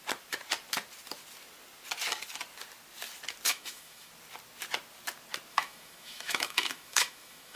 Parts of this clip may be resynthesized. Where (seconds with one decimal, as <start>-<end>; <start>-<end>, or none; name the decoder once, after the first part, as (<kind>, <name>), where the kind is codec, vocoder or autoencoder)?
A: 3.5-4.1 (autoencoder, DAC-VAE); 5.5-7.6